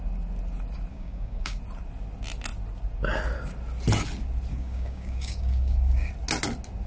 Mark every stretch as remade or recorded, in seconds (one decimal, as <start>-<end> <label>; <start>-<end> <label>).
0.0-0.9 recorded; 0.9-1.6 remade; 1.6-4.5 recorded; 4.5-6.1 remade; 6.1-6.9 recorded